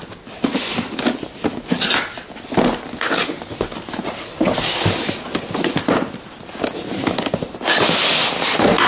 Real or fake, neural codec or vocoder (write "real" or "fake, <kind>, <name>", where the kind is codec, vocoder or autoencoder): real